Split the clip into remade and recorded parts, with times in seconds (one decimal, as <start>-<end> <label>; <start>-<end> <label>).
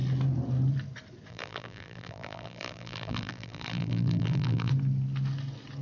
0.0-1.3 recorded; 1.3-4.7 remade; 4.7-5.8 recorded